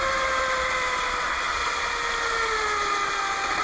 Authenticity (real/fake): real